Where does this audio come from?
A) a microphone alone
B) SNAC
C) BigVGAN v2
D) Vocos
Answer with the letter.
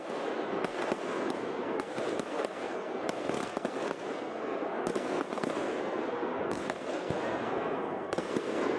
B